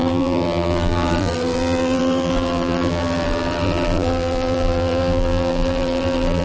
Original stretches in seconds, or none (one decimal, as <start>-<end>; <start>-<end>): none